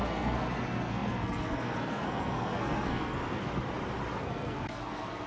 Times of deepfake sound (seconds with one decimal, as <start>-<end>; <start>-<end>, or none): 0.0-3.5; 4.2-5.3